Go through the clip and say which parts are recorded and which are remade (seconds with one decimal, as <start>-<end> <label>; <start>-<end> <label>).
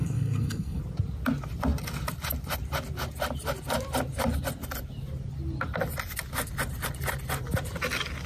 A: 0.0-0.8 remade; 0.8-8.3 recorded